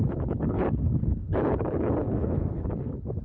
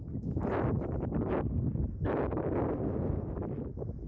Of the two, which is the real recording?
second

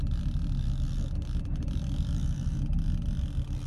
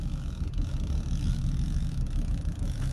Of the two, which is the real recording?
first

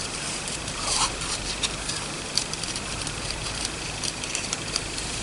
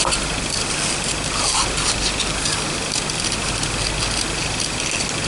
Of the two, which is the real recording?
second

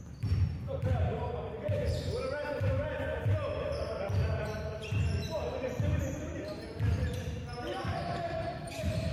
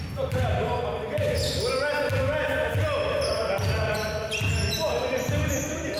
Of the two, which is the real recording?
second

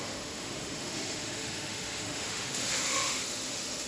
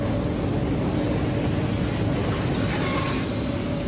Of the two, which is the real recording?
second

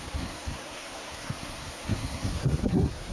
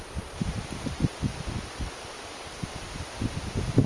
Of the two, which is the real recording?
second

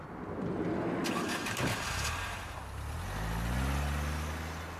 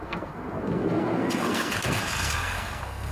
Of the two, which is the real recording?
first